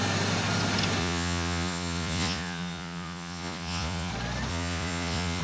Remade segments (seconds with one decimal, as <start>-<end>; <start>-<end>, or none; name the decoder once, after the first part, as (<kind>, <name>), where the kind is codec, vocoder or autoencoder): 1.0-4.1 (vocoder, Vocos); 4.5-5.4